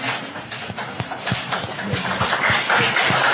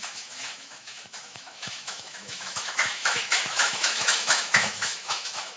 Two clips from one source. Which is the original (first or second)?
first